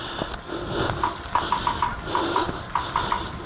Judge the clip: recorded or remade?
recorded